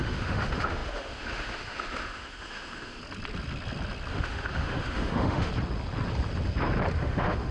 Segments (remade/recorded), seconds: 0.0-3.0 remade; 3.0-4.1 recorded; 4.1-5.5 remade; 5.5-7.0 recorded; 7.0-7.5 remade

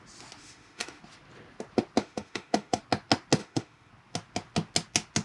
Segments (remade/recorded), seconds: 0.0-0.4 recorded; 0.4-1.0 remade; 1.0-2.0 recorded; 2.0-2.8 remade; 2.8-3.4 recorded; 3.4-3.9 remade; 3.9-5.2 recorded

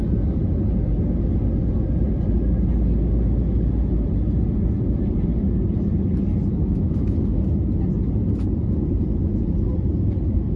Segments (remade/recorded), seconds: 0.0-6.5 recorded; 6.5-7.2 remade; 7.2-10.6 recorded